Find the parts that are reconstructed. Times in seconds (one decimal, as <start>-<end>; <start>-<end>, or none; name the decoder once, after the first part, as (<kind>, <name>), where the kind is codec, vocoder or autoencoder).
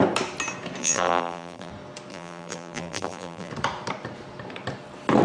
0.8-1.7 (vocoder, BigVGAN v2); 2.1-3.5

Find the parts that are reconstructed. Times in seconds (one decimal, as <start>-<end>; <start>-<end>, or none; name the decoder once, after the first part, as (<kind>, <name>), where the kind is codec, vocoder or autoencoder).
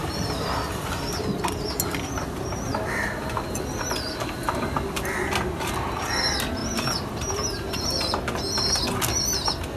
0.0-0.8 (vocoder, BigVGAN v2); 6.6-7.8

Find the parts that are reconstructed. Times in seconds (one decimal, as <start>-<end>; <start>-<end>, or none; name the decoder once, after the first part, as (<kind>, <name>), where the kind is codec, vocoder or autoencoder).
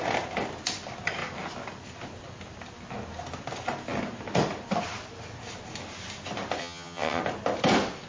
6.6-7.2 (vocoder, HiFi-GAN)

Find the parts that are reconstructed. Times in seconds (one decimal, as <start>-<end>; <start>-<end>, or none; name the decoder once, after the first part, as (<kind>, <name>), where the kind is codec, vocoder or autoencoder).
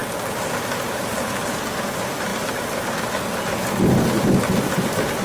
none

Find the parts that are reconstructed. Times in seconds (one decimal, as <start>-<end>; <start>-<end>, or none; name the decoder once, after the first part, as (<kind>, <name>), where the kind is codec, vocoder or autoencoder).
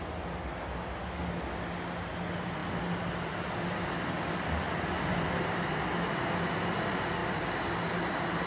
none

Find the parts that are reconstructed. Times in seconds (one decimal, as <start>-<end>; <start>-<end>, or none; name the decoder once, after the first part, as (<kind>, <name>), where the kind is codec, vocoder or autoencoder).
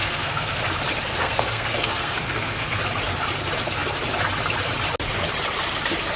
0.0-0.6 (codec, SNAC); 1.1-2.8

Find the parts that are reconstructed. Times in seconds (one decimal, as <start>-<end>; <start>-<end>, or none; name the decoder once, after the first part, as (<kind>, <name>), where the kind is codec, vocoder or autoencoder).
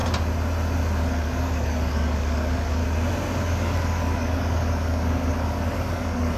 1.0-2.8 (codec, DAC); 3.5-6.4